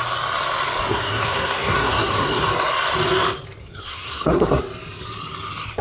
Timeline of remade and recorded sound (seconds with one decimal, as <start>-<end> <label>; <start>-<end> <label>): 0.0-0.9 recorded; 0.9-2.4 remade; 2.4-3.6 recorded; 3.6-4.6 remade; 4.6-5.8 recorded